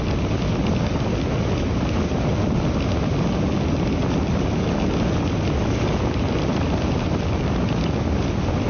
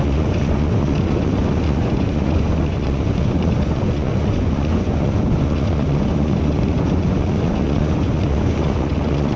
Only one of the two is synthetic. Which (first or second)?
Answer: second